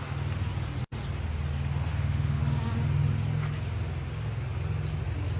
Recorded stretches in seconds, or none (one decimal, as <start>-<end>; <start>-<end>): 0.0-1.9; 2.4-5.4